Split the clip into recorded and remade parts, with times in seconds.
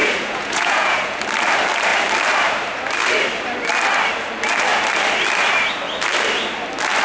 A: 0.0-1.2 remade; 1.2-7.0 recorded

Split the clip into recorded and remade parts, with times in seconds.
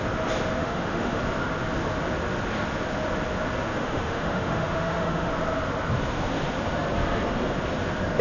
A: 0.0-0.6 recorded; 0.6-1.2 remade; 1.2-3.7 recorded; 3.7-5.3 remade; 5.3-8.2 recorded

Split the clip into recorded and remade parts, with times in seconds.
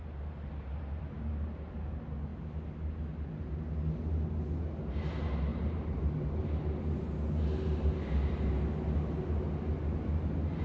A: 0.0-1.7 remade; 1.7-5.5 recorded; 5.5-6.4 remade; 6.4-10.6 recorded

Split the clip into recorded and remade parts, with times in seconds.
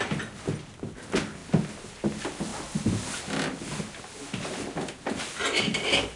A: 0.0-6.2 recorded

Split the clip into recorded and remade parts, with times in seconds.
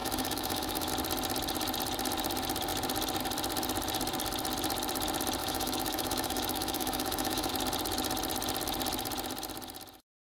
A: 0.0-0.9 remade; 0.9-5.4 recorded; 5.4-7.5 remade; 7.5-10.3 recorded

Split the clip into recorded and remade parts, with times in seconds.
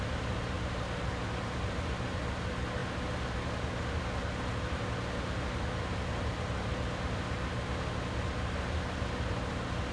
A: 0.0-9.9 recorded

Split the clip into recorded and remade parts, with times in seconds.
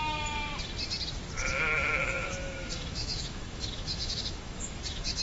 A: 0.0-2.0 recorded; 2.0-5.2 remade